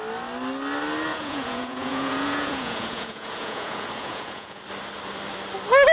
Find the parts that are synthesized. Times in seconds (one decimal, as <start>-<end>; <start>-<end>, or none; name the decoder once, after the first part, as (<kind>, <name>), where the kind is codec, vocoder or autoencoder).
1.1-4.6 (vocoder, Vocos)